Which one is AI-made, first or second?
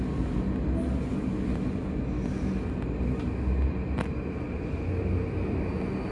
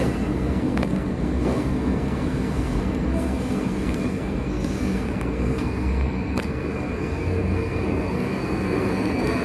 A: second